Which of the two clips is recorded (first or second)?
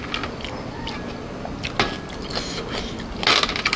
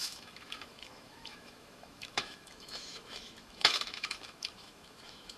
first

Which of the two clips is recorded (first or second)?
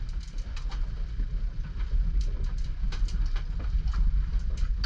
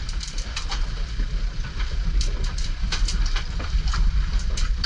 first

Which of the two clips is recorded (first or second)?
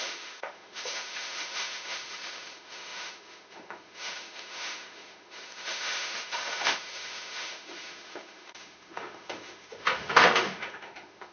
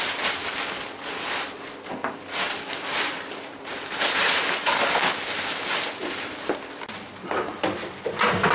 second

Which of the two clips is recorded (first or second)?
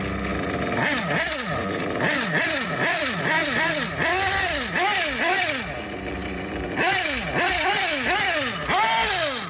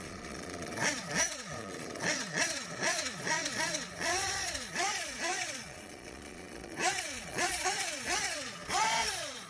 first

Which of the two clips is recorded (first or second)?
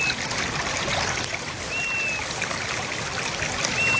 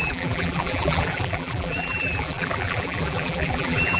first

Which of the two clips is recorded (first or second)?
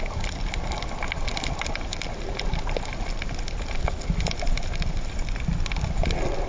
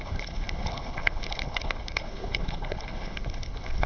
first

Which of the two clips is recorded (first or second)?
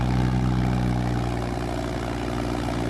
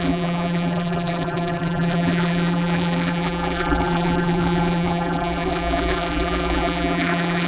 first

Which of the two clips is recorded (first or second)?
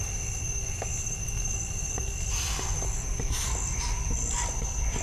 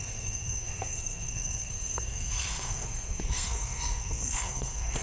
first